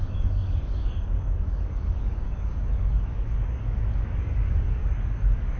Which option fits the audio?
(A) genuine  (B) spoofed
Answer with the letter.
B